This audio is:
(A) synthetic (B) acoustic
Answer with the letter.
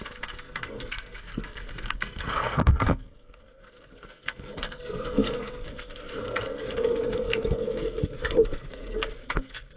A